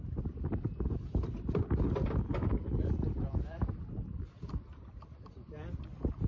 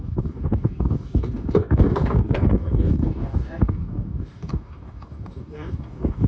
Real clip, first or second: first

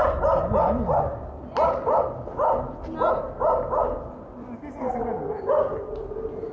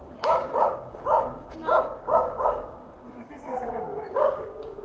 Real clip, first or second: first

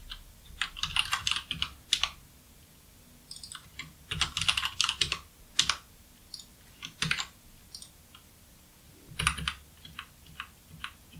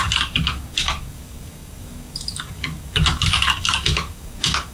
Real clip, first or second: first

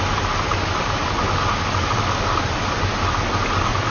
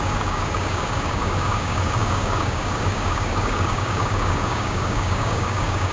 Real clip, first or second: first